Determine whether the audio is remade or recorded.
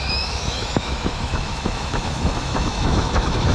remade